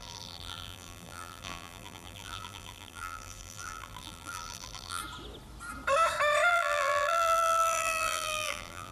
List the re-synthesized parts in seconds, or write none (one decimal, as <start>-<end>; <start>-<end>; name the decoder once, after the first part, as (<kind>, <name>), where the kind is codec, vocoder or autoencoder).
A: 0.0-5.0 (vocoder, BigVGAN v2); 6.5-8.9

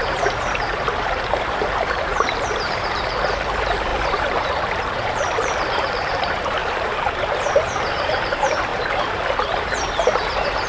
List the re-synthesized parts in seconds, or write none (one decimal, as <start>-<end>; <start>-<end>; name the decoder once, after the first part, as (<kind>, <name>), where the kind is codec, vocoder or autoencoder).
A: 0.0-10.7 (vocoder, BigVGAN v2)

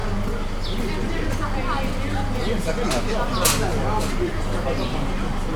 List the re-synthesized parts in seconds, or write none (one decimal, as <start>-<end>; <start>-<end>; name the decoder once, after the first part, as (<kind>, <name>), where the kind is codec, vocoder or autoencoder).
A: 3.7-5.1 (vocoder, BigVGAN v2)

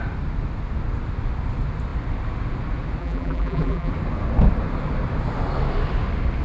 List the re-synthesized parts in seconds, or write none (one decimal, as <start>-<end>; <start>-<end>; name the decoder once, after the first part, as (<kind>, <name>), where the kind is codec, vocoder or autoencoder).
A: 3.0-3.9 (vocoder, BigVGAN v2)

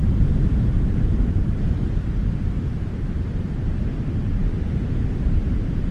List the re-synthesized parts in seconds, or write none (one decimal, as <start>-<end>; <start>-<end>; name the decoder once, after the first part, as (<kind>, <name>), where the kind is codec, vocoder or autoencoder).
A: 0.0-3.9 (vocoder, BigVGAN v2); 4.5-5.9